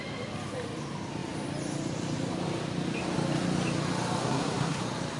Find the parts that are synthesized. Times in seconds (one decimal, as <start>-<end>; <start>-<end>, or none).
4.2-4.8